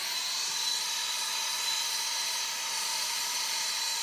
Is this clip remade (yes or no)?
yes